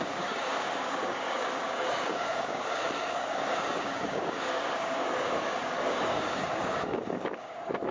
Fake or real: fake